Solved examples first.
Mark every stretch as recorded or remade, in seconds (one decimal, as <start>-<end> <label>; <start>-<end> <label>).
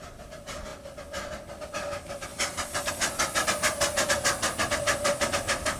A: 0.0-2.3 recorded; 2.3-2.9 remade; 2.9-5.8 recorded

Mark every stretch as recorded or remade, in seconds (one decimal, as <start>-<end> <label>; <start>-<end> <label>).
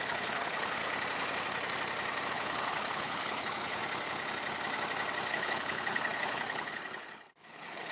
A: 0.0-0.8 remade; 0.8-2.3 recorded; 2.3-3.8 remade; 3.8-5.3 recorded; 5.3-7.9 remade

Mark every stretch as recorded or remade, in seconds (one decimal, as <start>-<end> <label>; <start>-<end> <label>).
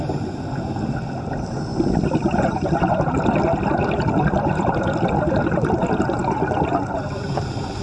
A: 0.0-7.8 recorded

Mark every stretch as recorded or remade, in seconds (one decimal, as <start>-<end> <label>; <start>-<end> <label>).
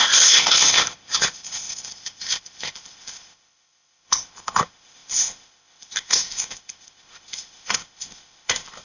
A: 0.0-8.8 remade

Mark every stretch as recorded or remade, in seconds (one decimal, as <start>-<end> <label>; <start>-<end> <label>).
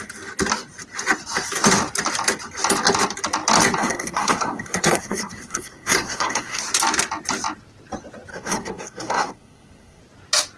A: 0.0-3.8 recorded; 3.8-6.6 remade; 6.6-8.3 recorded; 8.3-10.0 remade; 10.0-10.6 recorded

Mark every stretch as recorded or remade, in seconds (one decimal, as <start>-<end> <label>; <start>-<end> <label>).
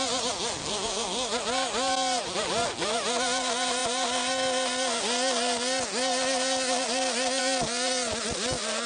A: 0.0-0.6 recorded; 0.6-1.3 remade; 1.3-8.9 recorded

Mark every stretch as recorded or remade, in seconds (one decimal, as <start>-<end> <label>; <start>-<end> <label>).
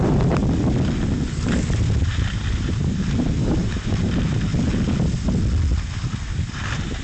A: 0.0-0.4 remade; 0.4-1.3 recorded; 1.3-4.5 remade; 4.5-5.7 recorded; 5.7-7.0 remade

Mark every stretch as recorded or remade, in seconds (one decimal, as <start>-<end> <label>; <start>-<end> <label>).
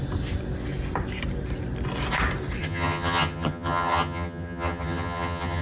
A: 0.0-2.6 recorded; 2.6-5.6 remade